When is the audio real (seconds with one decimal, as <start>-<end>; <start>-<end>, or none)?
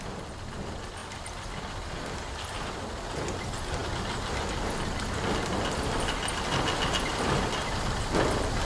0.0-8.6